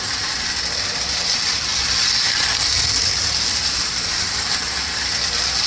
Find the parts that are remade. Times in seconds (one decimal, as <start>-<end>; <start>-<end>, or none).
none